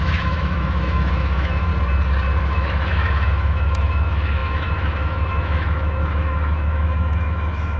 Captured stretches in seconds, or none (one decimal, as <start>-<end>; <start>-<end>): 1.7-2.4